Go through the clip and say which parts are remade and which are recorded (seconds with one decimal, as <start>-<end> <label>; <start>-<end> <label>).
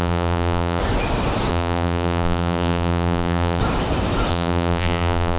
0.0-0.8 remade; 0.8-1.5 recorded; 1.5-3.6 remade; 3.6-4.3 recorded; 4.3-5.4 remade